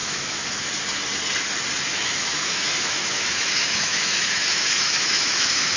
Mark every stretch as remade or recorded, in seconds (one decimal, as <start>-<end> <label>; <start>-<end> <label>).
0.0-0.7 remade; 0.7-1.9 recorded; 1.9-5.8 remade